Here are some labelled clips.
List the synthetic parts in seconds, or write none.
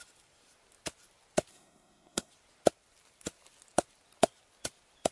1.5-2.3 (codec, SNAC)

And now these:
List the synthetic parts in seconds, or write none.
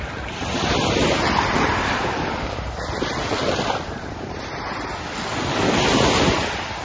1.7-4.6 (vocoder, BigVGAN v2)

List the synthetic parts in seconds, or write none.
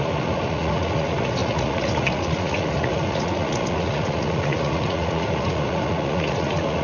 0.0-6.8 (vocoder, Vocos)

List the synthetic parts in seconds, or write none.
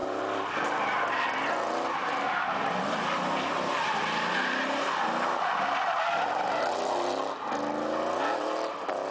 none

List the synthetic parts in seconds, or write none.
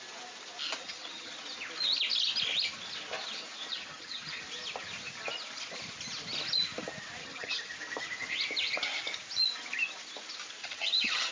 0.8-1.3 (vocoder, HiFi-GAN); 3.7-4.4; 7.2-7.7; 10.6-11.3